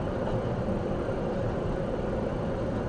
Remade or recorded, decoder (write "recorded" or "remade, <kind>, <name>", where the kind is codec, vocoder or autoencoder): remade, vocoder, BigVGAN v2